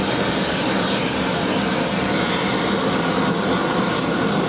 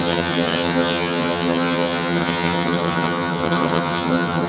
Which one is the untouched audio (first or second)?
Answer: first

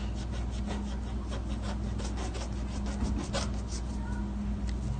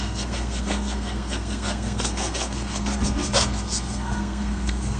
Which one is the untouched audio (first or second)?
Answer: first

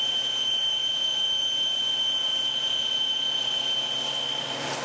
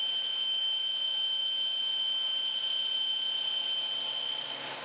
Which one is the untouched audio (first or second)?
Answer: second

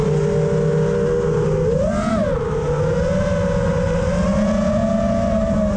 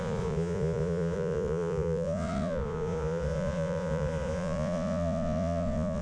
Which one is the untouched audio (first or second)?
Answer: first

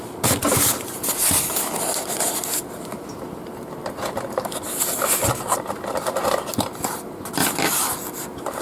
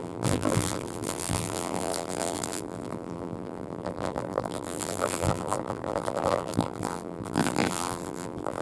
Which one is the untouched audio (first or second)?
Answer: first